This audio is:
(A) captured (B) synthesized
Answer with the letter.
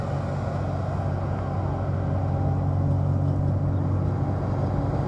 A